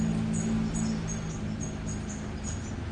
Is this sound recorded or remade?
recorded